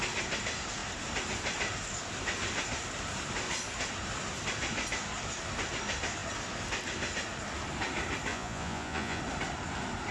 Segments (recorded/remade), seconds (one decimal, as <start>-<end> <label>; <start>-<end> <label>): 0.0-8.3 recorded; 8.3-9.2 remade; 9.2-10.1 recorded